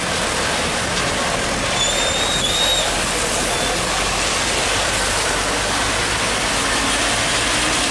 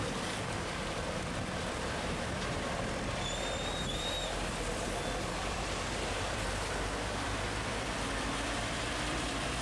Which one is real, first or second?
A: first